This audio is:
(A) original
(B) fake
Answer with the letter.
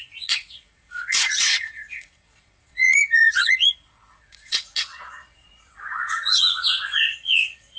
B